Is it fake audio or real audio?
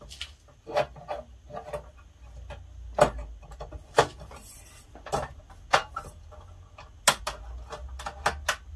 real